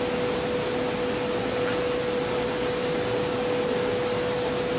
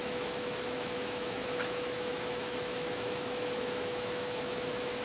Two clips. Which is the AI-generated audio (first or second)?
second